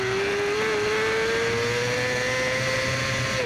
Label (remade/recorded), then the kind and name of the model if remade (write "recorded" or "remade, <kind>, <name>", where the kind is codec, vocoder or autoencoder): recorded